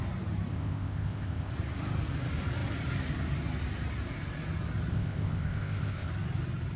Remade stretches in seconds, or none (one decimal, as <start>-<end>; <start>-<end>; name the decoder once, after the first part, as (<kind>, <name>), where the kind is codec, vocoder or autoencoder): 0.5-1.5 (codec, ZipCodec); 4.9-6.1